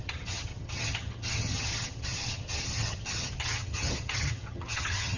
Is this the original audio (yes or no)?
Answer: no